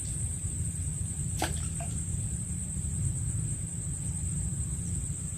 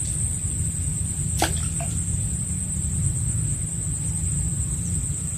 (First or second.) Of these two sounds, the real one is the second